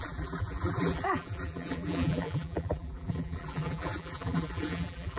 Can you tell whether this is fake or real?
fake